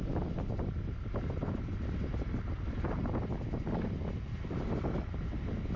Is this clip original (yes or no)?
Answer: yes